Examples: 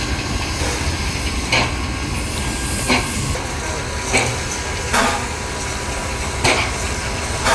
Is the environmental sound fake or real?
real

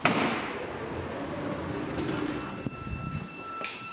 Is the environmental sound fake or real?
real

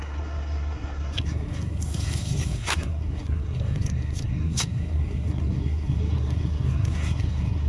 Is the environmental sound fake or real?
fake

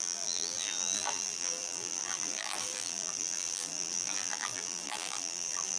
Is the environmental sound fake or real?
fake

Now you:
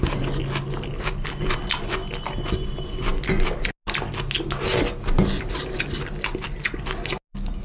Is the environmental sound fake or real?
real